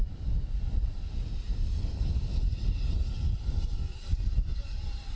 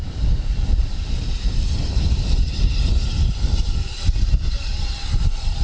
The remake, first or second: second